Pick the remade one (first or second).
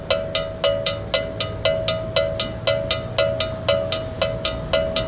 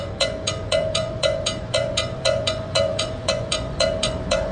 second